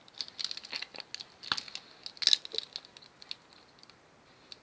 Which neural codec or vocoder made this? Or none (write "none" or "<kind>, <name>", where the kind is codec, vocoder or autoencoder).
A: none